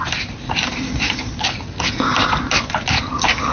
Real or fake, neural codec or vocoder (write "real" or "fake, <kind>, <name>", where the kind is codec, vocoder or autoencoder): real